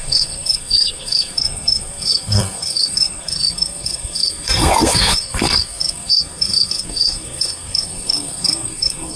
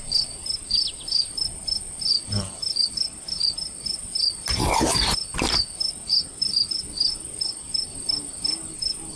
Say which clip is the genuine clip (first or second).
second